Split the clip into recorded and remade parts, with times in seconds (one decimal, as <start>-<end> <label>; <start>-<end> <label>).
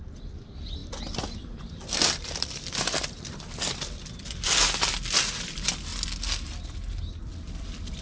0.0-5.9 remade; 5.9-7.2 recorded; 7.2-8.0 remade